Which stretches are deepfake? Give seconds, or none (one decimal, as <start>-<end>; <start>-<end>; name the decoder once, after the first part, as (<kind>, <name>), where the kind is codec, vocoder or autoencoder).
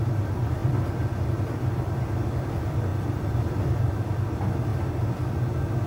0.0-4.7 (vocoder, BigVGAN v2)